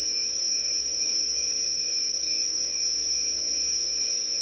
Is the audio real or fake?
fake